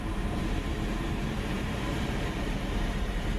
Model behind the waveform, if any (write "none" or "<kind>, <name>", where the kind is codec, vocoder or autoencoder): vocoder, BigVGAN v2